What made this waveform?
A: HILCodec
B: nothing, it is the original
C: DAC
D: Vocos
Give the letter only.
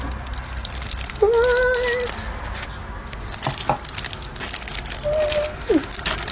B